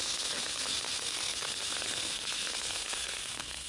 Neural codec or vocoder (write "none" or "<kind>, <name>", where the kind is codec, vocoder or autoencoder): codec, SNAC